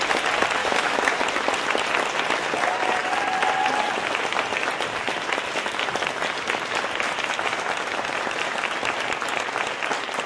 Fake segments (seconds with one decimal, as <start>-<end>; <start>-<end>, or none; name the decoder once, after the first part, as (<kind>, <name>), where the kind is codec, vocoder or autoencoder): 0.6-1.2 (autoencoder, DAC-VAE)